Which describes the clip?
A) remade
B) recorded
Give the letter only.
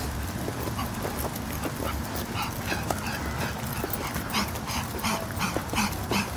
B